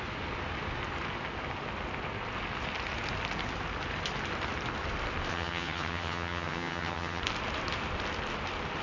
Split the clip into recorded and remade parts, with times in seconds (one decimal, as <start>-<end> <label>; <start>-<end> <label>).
0.0-5.3 recorded; 5.3-7.2 remade; 7.2-8.8 recorded